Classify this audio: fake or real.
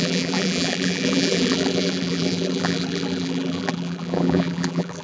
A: fake